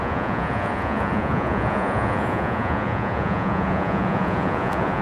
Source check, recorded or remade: remade